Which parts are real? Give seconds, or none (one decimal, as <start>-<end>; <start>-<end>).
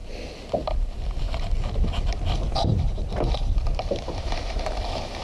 0.0-5.2